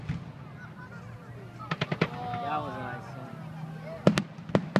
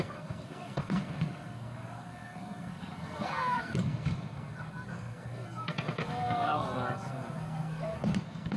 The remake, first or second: second